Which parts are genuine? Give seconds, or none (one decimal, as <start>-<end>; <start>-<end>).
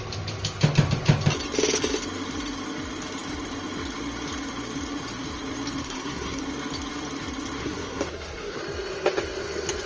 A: 0.0-5.8; 6.4-7.6; 8.6-9.9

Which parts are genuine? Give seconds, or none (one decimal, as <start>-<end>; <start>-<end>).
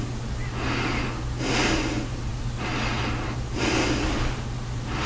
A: 0.0-5.1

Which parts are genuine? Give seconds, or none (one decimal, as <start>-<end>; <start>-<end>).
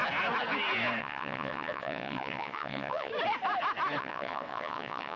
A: 0.0-1.0; 3.1-4.0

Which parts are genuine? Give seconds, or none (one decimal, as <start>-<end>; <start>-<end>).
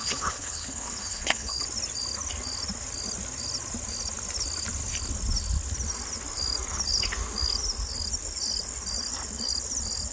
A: 1.6-10.1